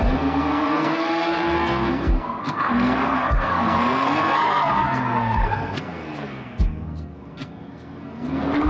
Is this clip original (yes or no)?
no